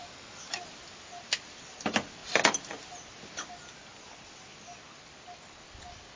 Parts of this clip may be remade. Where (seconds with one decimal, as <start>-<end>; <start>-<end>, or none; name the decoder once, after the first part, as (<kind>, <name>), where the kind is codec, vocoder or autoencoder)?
0.0-0.6 (codec, DAC)